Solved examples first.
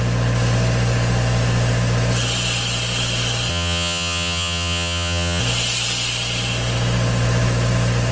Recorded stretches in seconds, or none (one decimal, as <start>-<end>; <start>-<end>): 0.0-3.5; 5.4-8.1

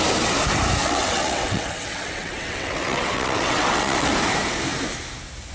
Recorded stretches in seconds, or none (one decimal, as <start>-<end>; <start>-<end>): 0.0-0.8; 4.1-5.5

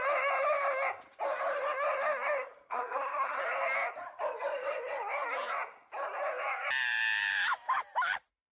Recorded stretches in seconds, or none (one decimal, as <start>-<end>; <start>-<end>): 0.0-2.4; 3.4-8.5